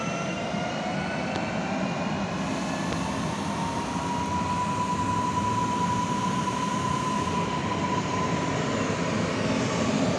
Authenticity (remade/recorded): recorded